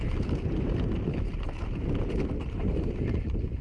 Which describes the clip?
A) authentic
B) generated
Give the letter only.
A